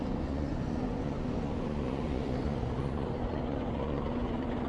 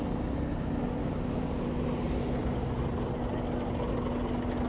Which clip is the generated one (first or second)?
first